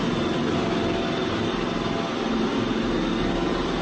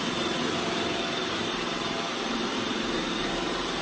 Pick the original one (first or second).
first